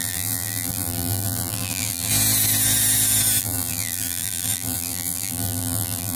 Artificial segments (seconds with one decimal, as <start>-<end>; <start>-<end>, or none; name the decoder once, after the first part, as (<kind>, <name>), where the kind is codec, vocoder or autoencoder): 0.0-2.1 (vocoder, BigVGAN v2); 3.4-6.2